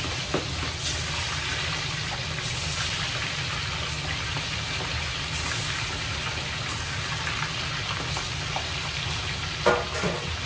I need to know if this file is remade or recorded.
recorded